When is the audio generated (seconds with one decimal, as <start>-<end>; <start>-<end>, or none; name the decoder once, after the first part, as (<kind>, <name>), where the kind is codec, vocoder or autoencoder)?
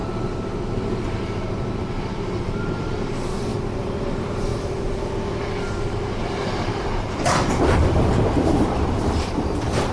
2.4-3.5 (vocoder, BigVGAN v2); 4.0-9.9